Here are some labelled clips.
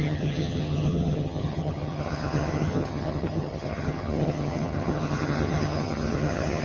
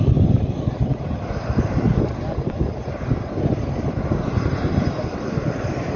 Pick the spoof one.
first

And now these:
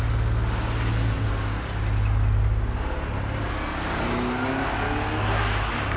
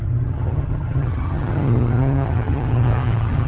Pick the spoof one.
second